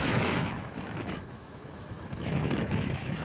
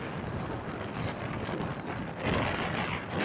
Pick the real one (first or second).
second